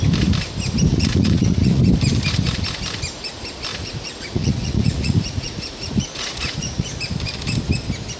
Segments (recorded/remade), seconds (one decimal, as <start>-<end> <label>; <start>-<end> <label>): 0.0-0.9 recorded; 0.9-1.8 remade; 1.8-3.7 recorded; 3.7-7.0 remade; 7.0-8.2 recorded